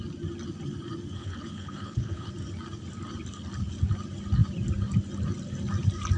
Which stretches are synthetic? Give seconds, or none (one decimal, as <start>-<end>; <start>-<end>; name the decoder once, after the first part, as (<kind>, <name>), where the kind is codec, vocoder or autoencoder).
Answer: 1.2-2.3 (codec, HILCodec)